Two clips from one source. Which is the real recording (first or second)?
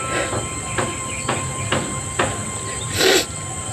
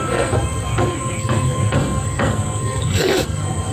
first